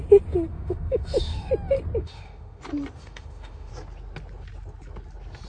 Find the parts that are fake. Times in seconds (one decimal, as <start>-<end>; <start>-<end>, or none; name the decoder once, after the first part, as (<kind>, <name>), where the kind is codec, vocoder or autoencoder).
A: 0.5-1.5 (autoencoder, DAC-VAE); 2.0-2.6; 3.0-3.7